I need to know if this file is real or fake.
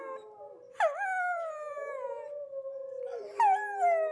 real